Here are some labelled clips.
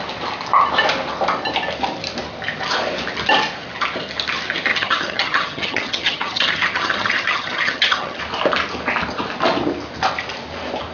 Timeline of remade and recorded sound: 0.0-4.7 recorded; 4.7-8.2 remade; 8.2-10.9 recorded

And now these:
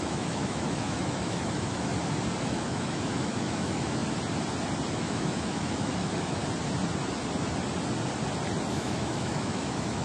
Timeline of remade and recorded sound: 0.0-1.9 remade; 1.9-2.4 recorded; 2.4-4.0 remade; 4.0-4.9 recorded; 4.9-6.4 remade; 6.4-8.7 recorded; 8.7-10.0 remade

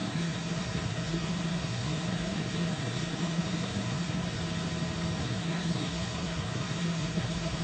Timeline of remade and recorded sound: 0.0-4.4 remade; 4.4-5.2 recorded; 5.2-7.6 remade

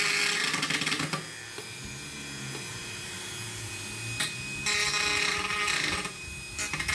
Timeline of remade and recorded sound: 0.0-2.7 recorded; 2.7-3.3 remade; 3.3-6.9 recorded

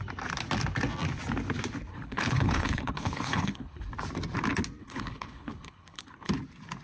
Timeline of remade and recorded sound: 0.0-1.9 recorded; 1.9-3.9 remade; 3.9-4.8 recorded; 4.8-6.3 remade; 6.3-6.8 recorded

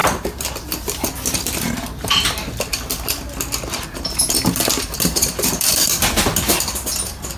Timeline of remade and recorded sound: 0.0-1.1 remade; 1.1-5.5 recorded; 5.5-6.0 remade; 6.0-7.4 recorded

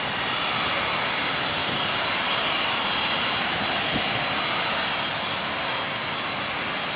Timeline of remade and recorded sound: 0.0-1.6 recorded; 1.6-3.7 remade; 3.7-7.0 recorded

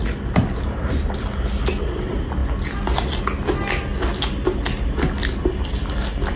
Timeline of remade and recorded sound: 0.0-6.4 recorded